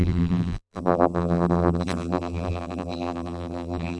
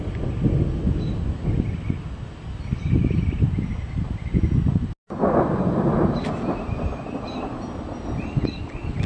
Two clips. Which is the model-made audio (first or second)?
first